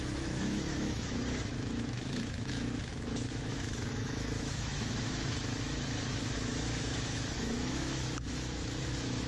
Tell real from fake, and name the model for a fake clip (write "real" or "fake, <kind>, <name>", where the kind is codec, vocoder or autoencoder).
fake, autoencoder, DAC-VAE